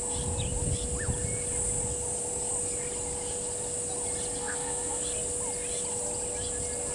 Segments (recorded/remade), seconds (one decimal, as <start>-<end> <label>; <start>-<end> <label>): 0.0-4.4 recorded; 4.4-5.0 remade; 5.0-6.9 recorded